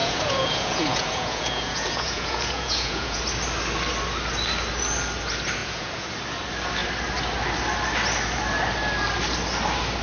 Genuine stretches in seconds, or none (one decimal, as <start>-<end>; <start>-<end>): 3.2-5.6; 6.1-10.0